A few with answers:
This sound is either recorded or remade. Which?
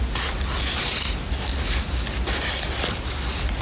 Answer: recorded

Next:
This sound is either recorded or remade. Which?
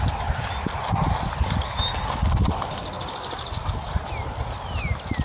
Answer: recorded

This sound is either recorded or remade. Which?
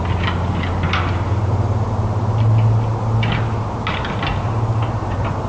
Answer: recorded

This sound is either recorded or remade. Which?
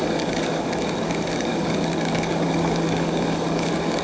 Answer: remade